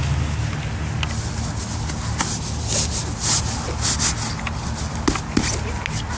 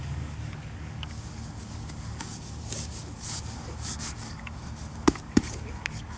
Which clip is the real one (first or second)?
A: first